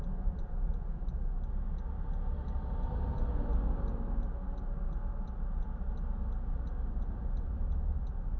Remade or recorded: recorded